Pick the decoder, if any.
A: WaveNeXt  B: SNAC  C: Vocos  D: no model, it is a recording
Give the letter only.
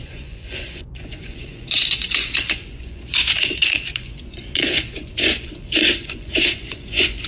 C